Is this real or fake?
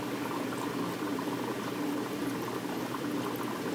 real